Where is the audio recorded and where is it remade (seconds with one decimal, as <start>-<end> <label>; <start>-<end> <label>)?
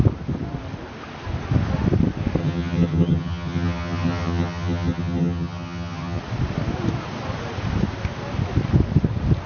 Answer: 0.0-2.4 recorded; 2.4-6.2 remade; 6.2-9.5 recorded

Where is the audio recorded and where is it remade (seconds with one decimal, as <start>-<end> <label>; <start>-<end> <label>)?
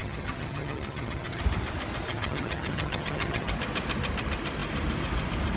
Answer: 0.0-1.4 remade; 1.4-2.1 recorded; 2.1-3.5 remade; 3.5-5.6 recorded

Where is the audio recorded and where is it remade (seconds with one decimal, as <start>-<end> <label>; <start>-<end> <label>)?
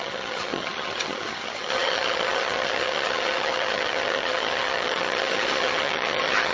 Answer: 0.0-6.5 remade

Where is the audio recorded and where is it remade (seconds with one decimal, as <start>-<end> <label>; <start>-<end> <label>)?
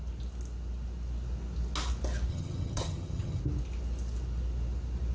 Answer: 0.0-2.3 recorded; 2.3-3.4 remade; 3.4-5.1 recorded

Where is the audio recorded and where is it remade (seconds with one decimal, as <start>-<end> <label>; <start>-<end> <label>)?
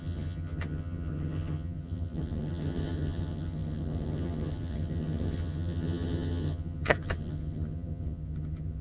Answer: 0.0-8.8 remade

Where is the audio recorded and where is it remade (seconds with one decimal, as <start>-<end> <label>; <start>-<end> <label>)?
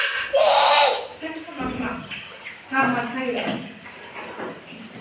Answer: 0.0-2.0 recorded; 2.0-2.5 remade; 2.5-5.0 recorded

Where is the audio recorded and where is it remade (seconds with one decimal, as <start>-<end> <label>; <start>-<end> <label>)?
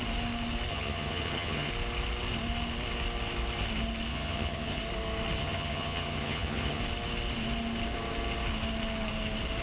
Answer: 0.0-0.7 recorded; 0.7-1.7 remade; 1.7-4.1 recorded; 4.1-4.8 remade; 4.8-5.4 recorded; 5.4-6.8 remade; 6.8-9.6 recorded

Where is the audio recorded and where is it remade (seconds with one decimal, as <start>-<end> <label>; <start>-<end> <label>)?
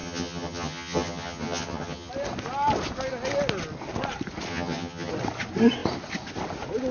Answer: 0.0-2.1 remade; 2.1-4.5 recorded; 4.5-5.1 remade; 5.1-6.9 recorded